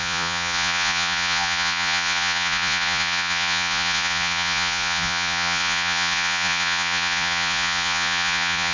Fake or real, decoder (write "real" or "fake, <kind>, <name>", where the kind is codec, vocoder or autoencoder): fake, vocoder, Vocos